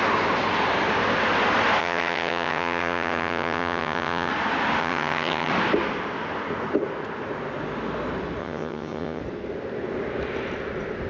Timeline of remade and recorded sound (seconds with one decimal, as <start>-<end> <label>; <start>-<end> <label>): 0.0-1.8 recorded; 1.8-4.3 remade; 4.3-4.8 recorded; 4.8-5.5 remade; 5.5-8.4 recorded; 8.4-9.2 remade; 9.2-11.1 recorded